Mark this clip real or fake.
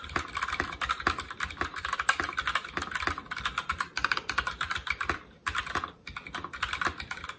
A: real